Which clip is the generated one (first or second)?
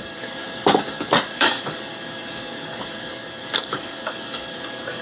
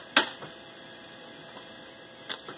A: first